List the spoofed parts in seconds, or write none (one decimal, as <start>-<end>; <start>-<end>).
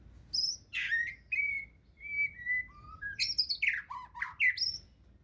none